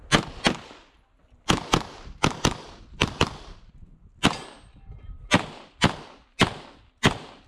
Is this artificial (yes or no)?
no